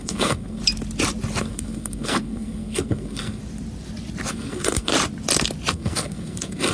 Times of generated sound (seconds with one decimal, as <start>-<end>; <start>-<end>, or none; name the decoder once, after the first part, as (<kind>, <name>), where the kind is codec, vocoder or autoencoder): 0.0-0.6 (codec, SNAC); 1.4-3.4; 4.3-4.9; 5.7-6.7